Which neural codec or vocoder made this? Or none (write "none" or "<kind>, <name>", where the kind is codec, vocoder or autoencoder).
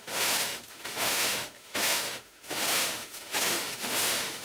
autoencoder, DAC-VAE